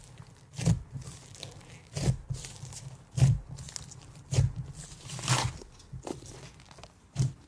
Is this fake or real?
real